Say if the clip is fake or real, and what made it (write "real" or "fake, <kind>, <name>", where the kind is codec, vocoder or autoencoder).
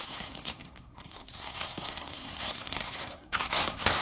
fake, codec, SNAC